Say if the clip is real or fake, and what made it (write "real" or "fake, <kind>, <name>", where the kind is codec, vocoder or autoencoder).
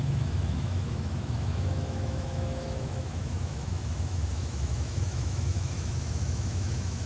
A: fake, autoencoder, DAC-VAE